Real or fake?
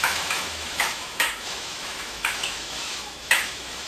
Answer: fake